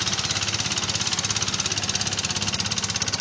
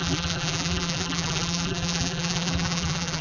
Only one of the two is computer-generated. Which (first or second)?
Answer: second